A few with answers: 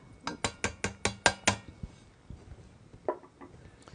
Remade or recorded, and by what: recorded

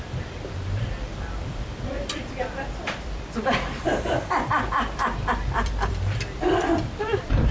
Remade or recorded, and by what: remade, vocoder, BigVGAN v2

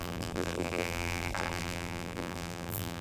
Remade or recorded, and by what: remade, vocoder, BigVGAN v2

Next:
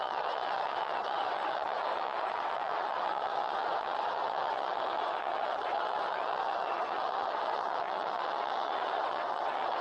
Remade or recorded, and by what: remade, vocoder, WaveNeXt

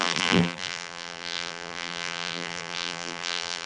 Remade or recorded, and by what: remade, vocoder, BigVGAN v2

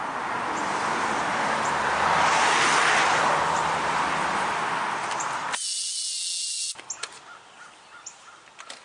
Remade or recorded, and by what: recorded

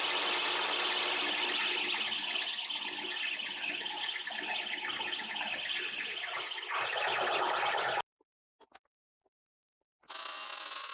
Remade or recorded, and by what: recorded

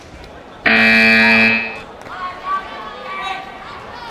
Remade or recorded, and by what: recorded